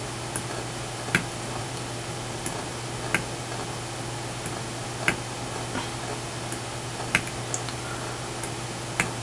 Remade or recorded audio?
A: recorded